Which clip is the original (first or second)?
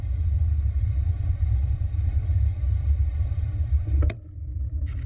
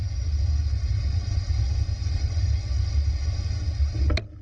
second